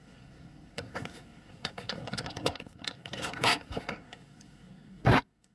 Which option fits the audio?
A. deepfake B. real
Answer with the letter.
A